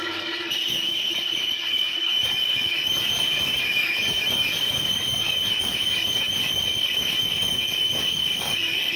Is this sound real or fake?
fake